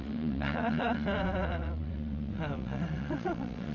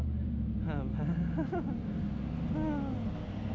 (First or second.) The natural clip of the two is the second